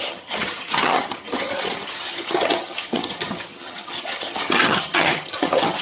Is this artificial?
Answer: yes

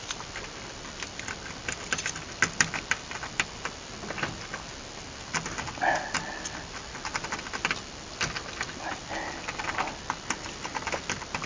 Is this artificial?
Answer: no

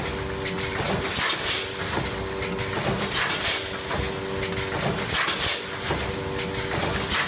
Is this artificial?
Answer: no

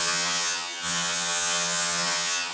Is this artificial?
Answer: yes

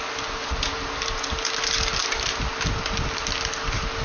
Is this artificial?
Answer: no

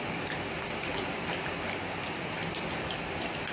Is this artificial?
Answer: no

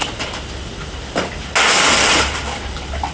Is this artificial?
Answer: no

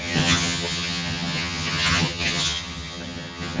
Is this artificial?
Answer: yes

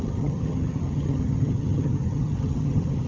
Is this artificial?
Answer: yes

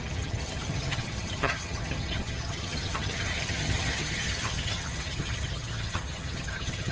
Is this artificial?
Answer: yes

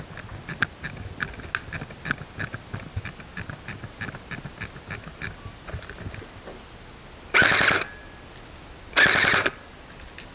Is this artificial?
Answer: no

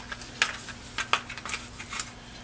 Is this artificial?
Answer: no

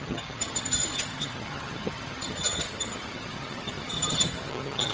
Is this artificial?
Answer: yes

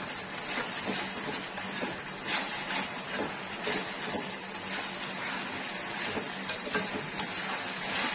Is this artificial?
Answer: no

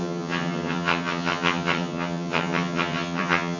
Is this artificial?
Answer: yes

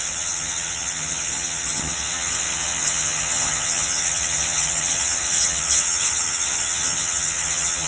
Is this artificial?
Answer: yes